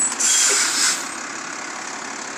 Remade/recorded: recorded